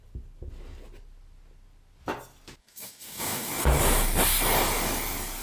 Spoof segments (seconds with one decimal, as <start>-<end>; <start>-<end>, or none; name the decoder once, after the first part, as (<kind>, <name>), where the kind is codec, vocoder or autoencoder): 2.6-3.5 (codec, DAC)